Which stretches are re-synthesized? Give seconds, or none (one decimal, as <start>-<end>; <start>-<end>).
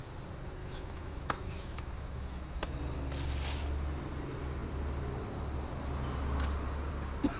0.6-2.8